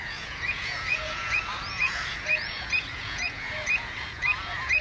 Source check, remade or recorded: remade